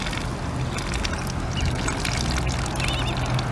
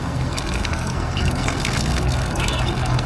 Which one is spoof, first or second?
second